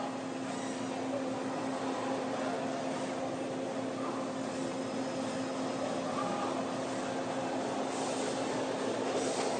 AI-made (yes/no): no